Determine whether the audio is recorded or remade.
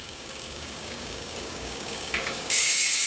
remade